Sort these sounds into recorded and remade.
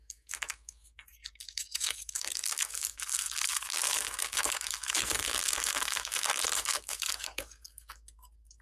remade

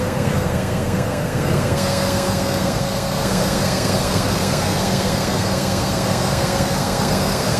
remade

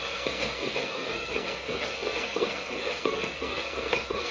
remade